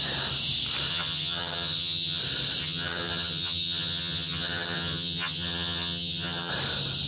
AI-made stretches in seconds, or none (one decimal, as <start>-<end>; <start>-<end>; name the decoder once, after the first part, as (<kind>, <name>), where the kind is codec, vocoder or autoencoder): 0.9-2.2 (vocoder, HiFi-GAN); 2.6-6.5